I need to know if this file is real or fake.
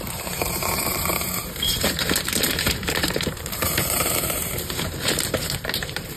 fake